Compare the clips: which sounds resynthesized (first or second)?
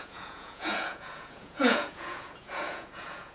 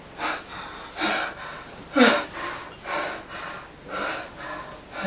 first